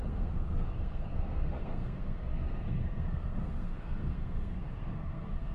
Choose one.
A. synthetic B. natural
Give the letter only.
A